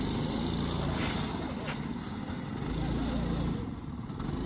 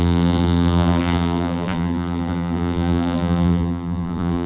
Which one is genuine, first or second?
first